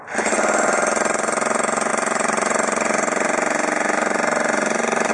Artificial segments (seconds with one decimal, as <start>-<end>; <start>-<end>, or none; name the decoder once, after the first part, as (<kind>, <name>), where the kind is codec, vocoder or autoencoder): none